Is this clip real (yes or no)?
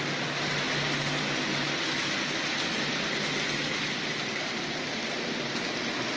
no